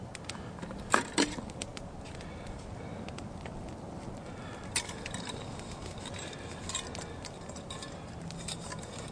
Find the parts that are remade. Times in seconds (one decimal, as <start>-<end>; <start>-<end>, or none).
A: none